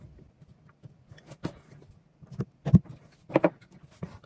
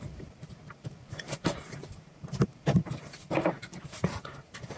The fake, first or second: second